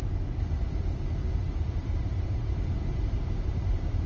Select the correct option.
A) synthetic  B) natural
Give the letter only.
A